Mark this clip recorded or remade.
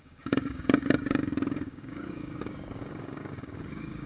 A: remade